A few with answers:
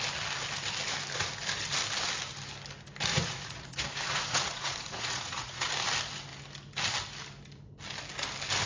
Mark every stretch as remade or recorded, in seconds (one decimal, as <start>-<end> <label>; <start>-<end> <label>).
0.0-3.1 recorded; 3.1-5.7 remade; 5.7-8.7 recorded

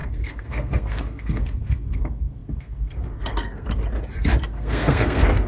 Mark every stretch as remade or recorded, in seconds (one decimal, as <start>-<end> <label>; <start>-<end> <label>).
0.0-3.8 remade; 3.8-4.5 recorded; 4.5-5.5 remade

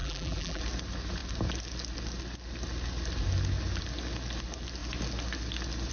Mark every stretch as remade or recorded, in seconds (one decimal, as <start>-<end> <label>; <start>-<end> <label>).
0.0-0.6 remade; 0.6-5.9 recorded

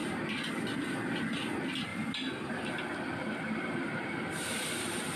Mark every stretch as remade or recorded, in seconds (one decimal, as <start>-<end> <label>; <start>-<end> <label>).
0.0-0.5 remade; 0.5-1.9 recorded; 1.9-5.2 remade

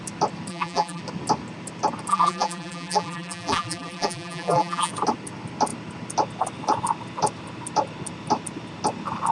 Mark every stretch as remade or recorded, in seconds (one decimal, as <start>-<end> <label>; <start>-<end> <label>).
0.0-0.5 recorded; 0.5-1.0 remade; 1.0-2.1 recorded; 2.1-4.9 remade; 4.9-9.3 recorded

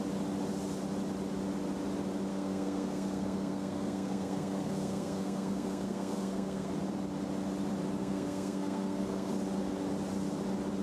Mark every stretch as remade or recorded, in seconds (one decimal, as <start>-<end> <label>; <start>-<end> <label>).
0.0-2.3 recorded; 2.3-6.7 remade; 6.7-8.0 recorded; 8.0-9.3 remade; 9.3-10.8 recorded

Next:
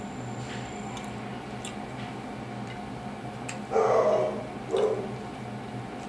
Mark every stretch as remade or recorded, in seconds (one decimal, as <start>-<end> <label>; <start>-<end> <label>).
0.0-6.1 recorded